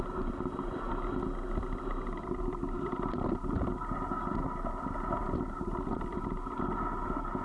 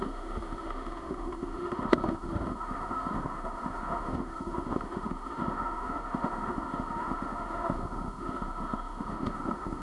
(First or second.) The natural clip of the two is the first